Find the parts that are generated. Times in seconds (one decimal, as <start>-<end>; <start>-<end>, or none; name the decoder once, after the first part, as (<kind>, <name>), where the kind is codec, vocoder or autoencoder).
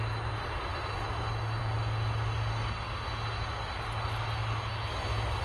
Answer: none